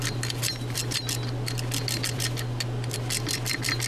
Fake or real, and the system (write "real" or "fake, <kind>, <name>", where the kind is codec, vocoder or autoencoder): real